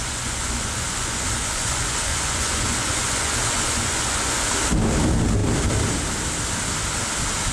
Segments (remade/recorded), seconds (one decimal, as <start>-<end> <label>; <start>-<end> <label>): 0.0-4.5 remade; 4.5-7.5 recorded